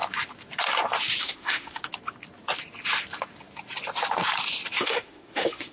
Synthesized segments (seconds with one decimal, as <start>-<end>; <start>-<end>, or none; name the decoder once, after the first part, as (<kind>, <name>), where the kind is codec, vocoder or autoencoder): 1.2-1.8 (autoencoder, DAC-VAE); 4.8-5.7